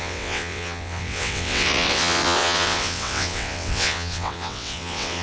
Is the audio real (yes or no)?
no